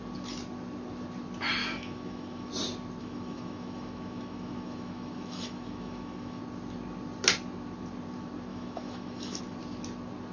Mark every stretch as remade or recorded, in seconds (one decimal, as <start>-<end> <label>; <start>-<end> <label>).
0.0-1.6 recorded; 1.6-2.5 remade; 2.5-3.0 recorded; 3.0-6.4 remade; 6.4-8.5 recorded; 8.5-9.4 remade; 9.4-10.3 recorded